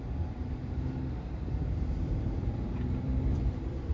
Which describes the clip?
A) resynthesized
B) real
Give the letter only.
A